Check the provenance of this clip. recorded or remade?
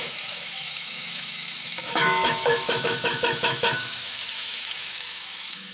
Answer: remade